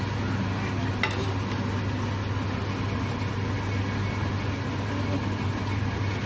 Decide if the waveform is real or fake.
real